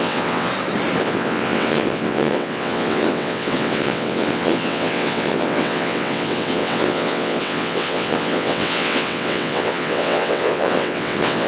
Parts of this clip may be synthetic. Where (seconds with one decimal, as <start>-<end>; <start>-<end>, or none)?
0.0-0.5; 1.0-11.5